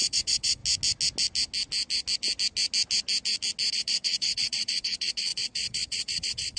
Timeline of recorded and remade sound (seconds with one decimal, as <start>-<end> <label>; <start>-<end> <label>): 0.0-0.6 remade; 0.6-3.7 recorded; 3.7-6.6 remade